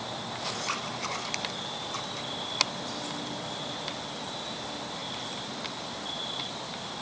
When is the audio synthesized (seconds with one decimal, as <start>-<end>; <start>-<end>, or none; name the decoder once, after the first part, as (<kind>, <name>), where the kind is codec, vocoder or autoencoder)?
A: none